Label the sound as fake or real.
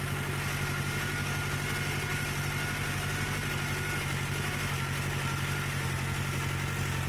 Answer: real